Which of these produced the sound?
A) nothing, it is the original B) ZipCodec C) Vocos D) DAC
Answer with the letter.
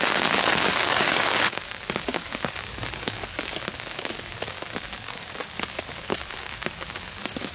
D